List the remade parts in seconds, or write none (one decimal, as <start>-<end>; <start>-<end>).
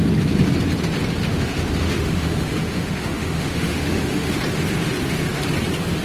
1.2-4.4